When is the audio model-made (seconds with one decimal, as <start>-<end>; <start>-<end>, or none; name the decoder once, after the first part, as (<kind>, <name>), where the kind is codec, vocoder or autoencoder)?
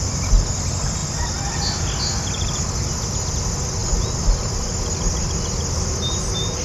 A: none